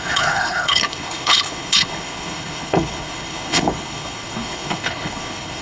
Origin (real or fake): fake